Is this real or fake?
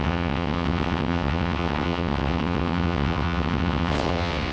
fake